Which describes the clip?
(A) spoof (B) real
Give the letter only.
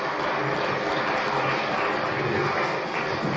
B